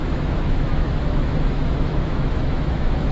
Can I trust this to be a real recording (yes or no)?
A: no